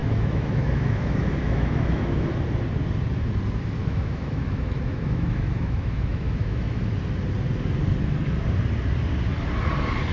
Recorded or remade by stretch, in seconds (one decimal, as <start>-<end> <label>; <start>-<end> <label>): 0.0-2.3 remade; 2.3-3.8 recorded; 3.8-6.9 remade; 6.9-10.1 recorded